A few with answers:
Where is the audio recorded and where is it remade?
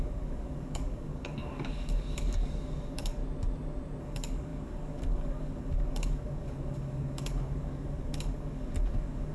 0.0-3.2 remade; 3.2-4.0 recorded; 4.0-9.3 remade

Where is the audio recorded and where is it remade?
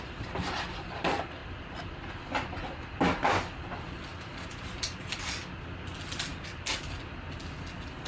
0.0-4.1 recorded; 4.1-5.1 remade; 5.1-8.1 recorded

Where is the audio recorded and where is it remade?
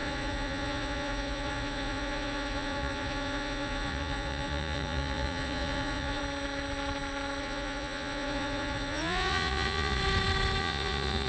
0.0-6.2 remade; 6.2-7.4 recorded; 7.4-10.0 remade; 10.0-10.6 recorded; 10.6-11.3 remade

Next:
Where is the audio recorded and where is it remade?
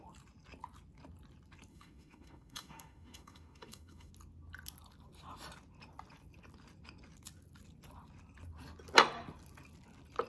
0.0-1.7 recorded; 1.7-4.1 remade; 4.1-10.3 recorded